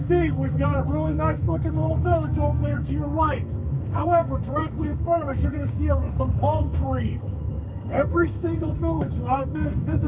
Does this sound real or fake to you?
fake